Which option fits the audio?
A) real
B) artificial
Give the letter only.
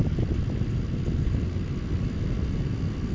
A